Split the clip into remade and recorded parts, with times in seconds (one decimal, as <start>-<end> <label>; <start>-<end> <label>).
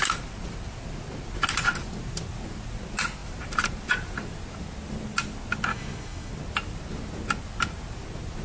0.0-5.7 recorded; 5.7-6.3 remade; 6.3-8.4 recorded